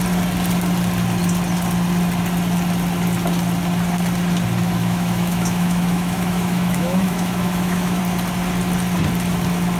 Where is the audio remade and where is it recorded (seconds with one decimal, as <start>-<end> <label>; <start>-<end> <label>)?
0.0-4.8 recorded; 4.8-8.0 remade; 8.0-9.8 recorded